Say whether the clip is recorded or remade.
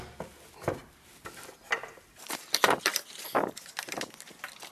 recorded